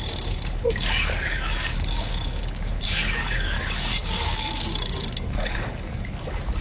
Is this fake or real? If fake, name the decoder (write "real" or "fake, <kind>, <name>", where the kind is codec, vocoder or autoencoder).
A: fake, codec, DAC